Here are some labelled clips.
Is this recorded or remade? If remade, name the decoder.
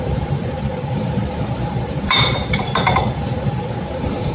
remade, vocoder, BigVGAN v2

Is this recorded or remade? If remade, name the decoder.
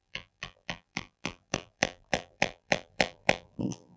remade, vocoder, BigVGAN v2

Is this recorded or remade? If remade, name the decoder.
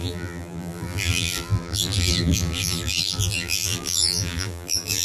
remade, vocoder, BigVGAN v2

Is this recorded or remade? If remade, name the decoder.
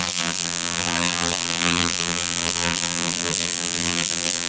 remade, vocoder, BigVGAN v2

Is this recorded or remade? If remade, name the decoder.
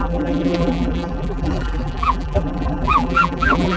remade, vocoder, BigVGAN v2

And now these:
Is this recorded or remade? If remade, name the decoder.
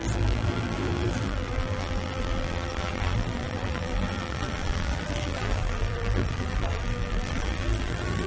remade, vocoder, BigVGAN v2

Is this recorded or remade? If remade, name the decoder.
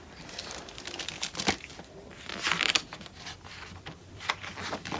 remade, vocoder, BigVGAN v2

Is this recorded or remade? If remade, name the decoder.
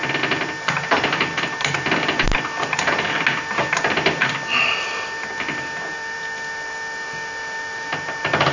remade, vocoder, BigVGAN v2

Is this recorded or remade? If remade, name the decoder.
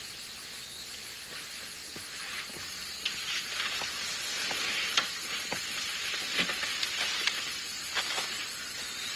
recorded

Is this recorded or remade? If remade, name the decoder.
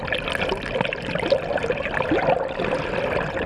recorded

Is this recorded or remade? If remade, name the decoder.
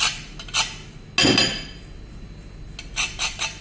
recorded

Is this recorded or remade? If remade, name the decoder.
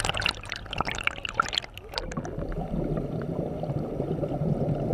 remade, vocoder, BigVGAN v2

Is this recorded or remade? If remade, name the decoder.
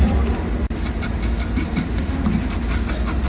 recorded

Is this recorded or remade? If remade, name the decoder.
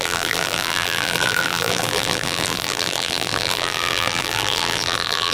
remade, vocoder, BigVGAN v2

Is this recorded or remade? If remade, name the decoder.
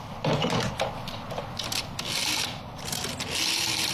recorded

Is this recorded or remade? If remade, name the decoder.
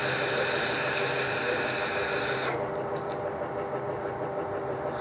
remade, vocoder, BigVGAN v2